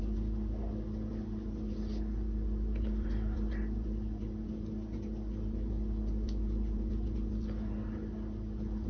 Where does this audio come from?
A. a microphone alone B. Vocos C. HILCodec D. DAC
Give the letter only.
A